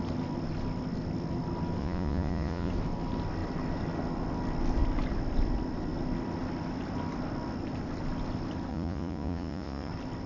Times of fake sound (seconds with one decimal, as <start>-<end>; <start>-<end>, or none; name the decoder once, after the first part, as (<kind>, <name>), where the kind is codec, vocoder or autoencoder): 1.8-2.7 (vocoder, Vocos); 8.7-9.9